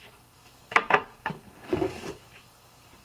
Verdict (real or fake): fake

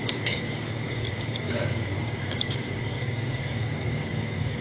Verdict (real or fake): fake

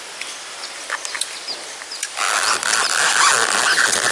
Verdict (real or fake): real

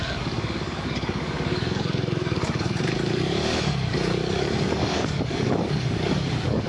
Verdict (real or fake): fake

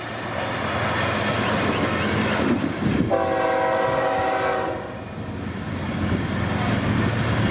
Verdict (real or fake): real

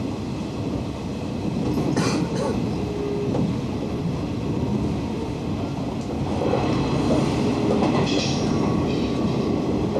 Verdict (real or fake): real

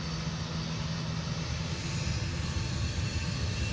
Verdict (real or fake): real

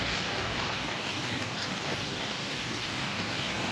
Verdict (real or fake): fake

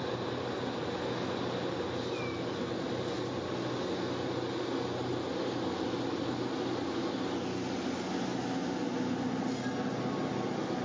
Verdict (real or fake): real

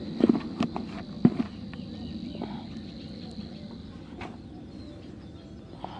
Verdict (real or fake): real